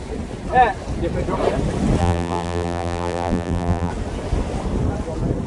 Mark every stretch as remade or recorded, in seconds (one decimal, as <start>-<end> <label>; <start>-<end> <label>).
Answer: 0.0-2.0 recorded; 2.0-3.9 remade; 3.9-5.5 recorded